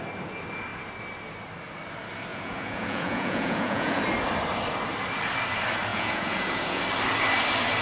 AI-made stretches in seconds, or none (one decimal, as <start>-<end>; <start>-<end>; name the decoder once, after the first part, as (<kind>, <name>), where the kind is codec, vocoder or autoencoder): 2.3-4.0 (vocoder, Vocos); 5.9-6.8